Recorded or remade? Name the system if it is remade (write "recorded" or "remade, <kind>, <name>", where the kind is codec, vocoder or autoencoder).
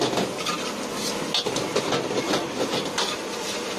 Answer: recorded